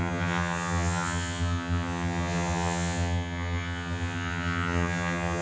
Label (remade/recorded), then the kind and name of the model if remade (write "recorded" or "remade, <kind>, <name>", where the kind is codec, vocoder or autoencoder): remade, vocoder, HiFi-GAN